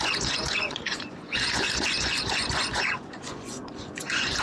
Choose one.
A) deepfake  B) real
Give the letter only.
A